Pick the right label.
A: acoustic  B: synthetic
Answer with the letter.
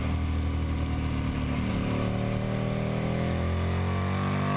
A